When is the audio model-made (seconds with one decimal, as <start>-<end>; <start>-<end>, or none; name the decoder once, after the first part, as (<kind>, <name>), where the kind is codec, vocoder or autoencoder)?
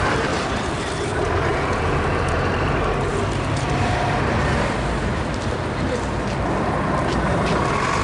1.5-2.5 (vocoder, Vocos)